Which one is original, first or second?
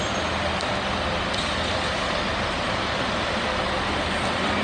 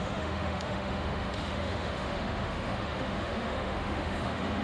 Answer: first